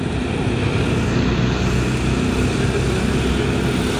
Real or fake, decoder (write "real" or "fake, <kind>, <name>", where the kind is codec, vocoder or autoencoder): real